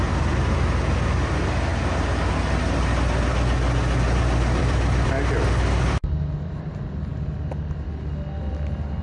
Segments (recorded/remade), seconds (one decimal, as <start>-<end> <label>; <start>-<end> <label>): 0.0-1.7 remade; 1.7-4.2 recorded; 4.2-7.1 remade; 7.1-8.4 recorded; 8.4-9.0 remade